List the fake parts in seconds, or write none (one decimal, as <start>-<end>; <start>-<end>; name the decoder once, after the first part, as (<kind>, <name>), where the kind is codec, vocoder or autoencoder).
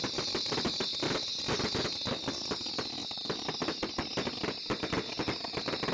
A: none